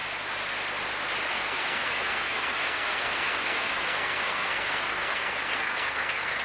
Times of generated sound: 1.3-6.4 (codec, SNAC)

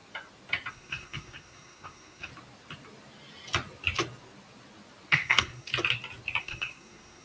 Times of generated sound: 0.7-2.3 (codec, SNAC); 5.1-5.7; 6.4-7.2

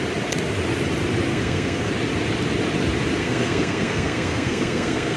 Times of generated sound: 1.3-1.9 (codec, SNAC); 3.2-5.2

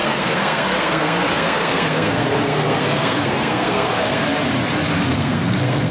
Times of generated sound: 0.0-4.2 (codec, SNAC); 5.1-5.9

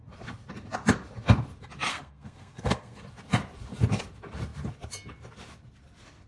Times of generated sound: 1.9-3.0 (codec, SNAC)

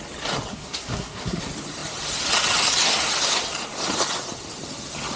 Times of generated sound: 0.5-1.4 (codec, SNAC)

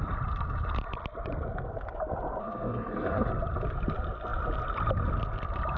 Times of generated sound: 2.4-3.3 (codec, SNAC)

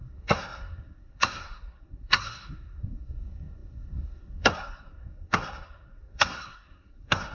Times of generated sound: 0.0-7.3 (codec, SNAC)